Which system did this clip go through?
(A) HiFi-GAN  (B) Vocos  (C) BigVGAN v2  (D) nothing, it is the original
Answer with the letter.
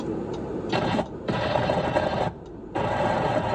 C